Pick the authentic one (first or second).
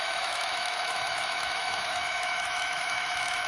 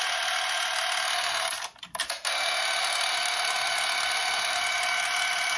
second